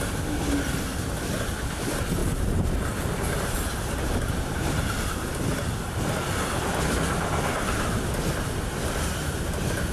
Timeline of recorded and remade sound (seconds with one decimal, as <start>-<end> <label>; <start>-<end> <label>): 0.0-2.2 recorded; 2.2-5.0 remade; 5.0-9.9 recorded

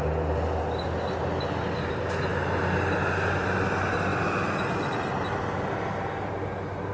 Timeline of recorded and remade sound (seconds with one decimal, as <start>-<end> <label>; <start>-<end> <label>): 0.0-6.9 recorded

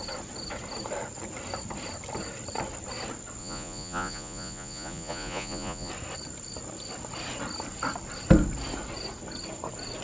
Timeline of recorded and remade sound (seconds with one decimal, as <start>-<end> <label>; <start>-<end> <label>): 0.0-3.4 recorded; 3.4-5.9 remade; 5.9-10.0 recorded

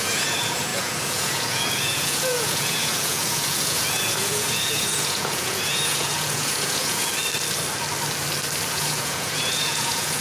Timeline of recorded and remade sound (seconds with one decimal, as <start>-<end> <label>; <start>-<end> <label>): 0.0-7.1 remade; 7.1-8.7 recorded; 8.7-10.2 remade

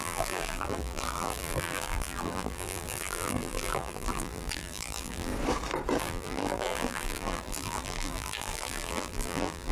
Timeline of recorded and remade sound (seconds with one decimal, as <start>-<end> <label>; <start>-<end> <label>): 0.0-5.3 remade; 5.3-6.0 recorded; 6.0-9.7 remade

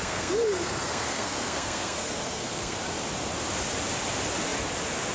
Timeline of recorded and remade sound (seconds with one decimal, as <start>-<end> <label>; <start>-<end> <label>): 0.0-2.8 remade; 2.8-5.1 recorded